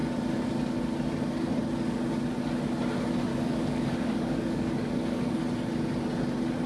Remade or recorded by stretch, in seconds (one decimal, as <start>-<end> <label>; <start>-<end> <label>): 0.0-3.3 recorded; 3.3-5.4 remade; 5.4-6.7 recorded